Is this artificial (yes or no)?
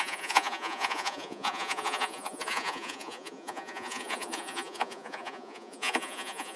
yes